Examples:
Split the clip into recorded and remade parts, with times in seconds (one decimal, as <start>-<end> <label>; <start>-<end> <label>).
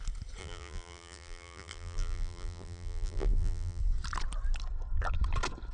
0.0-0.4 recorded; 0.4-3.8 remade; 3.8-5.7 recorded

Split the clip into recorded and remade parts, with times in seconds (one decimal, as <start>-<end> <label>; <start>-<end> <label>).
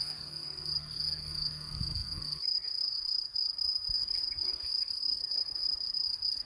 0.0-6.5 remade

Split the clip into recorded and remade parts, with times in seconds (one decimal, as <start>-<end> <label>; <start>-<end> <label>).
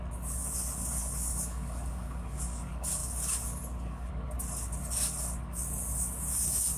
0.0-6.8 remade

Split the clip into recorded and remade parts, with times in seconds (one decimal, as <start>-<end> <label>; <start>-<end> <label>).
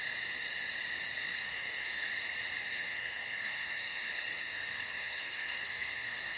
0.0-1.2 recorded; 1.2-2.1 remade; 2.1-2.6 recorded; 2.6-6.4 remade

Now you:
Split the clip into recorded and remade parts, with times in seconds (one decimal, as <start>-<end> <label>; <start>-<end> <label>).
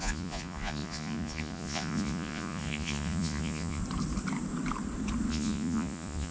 0.0-3.8 remade; 3.8-5.3 recorded; 5.3-6.3 remade